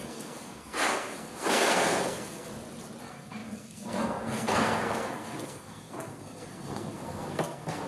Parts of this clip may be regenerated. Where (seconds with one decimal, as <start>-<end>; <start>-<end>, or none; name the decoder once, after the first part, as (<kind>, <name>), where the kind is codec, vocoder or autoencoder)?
0.0-2.5 (codec, SNAC); 3.0-7.9